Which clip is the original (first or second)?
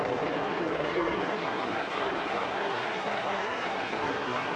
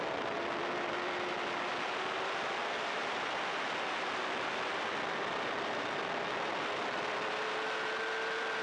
second